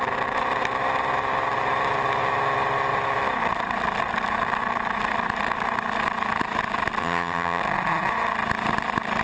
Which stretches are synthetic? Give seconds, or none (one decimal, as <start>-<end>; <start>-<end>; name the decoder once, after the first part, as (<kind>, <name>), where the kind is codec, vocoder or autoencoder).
7.0-7.6 (vocoder, HiFi-GAN)